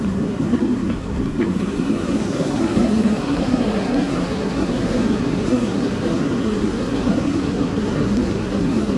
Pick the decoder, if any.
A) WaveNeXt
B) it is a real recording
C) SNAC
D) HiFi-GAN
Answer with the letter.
C